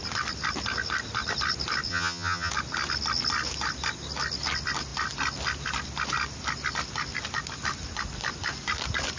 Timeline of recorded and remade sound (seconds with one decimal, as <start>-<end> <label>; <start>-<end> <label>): 0.0-1.9 recorded; 1.9-2.5 remade; 2.5-9.2 recorded